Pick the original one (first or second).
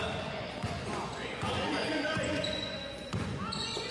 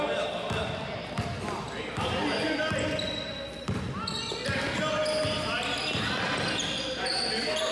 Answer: second